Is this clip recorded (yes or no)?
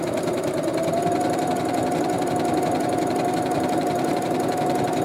no